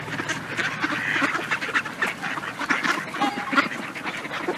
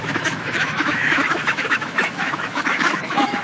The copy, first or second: second